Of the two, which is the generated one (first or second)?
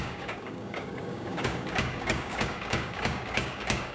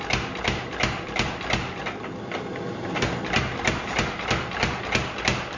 first